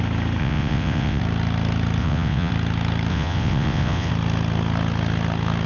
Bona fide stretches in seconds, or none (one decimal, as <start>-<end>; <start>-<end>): 0.0-0.4; 1.2-2.0; 2.5-3.1; 4.1-5.7